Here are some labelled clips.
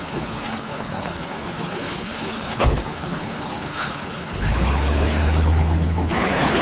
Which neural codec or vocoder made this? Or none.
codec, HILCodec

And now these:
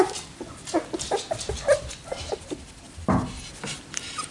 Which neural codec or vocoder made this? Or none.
none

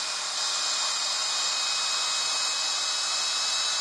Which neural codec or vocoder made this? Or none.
none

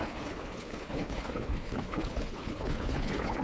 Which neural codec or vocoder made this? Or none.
codec, HILCodec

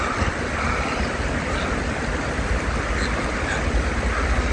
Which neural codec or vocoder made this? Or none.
none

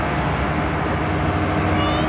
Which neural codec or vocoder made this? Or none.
none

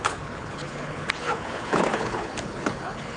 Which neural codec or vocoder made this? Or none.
codec, HILCodec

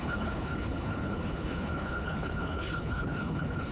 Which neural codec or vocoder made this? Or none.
codec, HILCodec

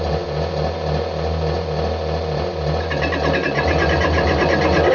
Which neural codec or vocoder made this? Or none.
none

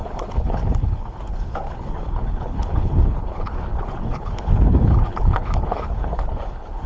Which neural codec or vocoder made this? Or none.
codec, HILCodec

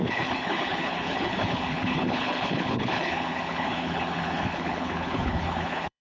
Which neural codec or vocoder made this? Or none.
codec, HILCodec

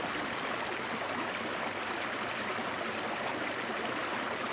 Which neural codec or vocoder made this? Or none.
none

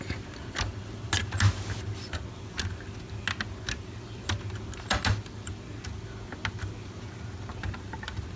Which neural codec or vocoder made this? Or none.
none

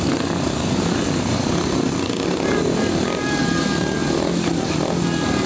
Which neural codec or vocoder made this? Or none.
none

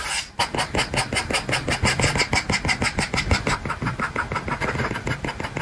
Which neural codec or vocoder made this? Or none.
none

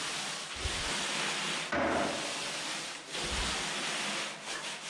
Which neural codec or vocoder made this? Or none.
none